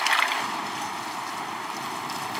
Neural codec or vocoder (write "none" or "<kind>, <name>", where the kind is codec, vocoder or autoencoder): none